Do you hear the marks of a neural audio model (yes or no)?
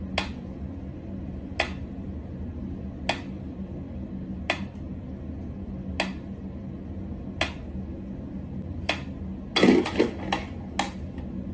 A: no